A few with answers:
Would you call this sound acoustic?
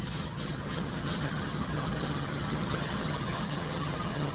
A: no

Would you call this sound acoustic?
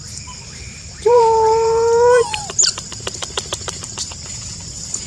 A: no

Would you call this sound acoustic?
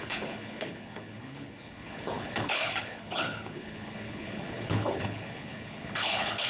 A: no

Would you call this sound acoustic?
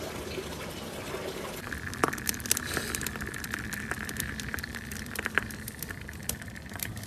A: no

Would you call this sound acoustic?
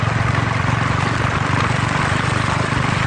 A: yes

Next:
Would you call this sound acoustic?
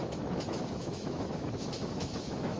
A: no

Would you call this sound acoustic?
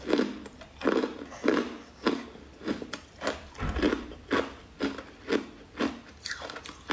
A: yes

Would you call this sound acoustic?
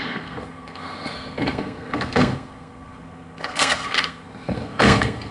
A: no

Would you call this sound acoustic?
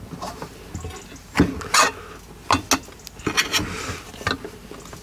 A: yes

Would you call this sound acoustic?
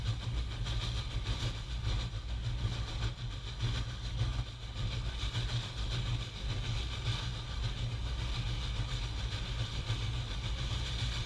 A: yes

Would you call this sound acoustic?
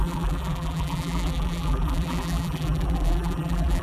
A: no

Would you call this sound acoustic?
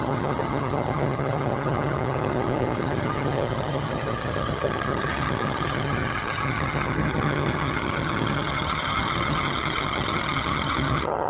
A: no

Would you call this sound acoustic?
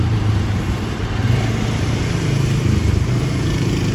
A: no